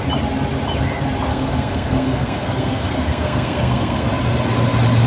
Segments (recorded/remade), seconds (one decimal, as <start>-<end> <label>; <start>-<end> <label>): 0.0-1.3 recorded; 1.3-4.1 remade; 4.1-5.1 recorded